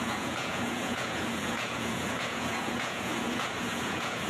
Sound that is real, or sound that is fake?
fake